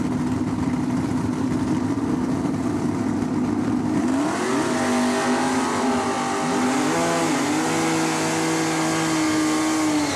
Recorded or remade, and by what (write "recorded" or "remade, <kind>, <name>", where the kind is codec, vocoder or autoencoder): recorded